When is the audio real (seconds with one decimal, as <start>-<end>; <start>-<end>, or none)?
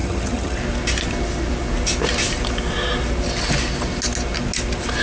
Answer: 0.6-5.0